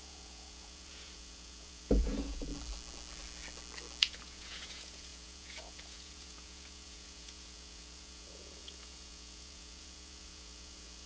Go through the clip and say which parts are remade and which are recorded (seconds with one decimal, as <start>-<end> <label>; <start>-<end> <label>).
0.0-2.5 remade; 2.5-4.0 recorded; 4.0-11.1 remade